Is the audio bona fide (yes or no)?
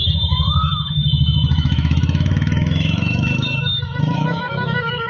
no